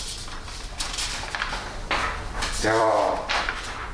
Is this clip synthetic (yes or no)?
yes